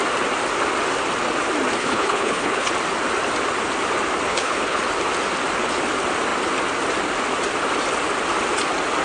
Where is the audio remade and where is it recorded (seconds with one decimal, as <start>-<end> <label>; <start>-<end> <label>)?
0.0-1.8 recorded; 1.8-2.7 remade; 2.7-4.3 recorded; 4.3-4.8 remade; 4.8-9.0 recorded